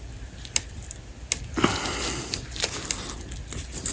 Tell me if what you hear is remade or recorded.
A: recorded